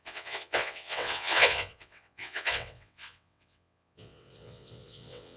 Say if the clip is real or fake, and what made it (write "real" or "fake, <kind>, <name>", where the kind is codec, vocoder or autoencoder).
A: fake, vocoder, WaveNeXt